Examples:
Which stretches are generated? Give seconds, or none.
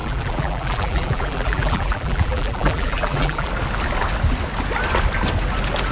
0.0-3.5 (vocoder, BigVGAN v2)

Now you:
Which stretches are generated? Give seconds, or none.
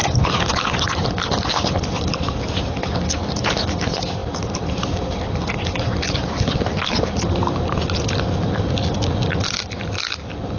none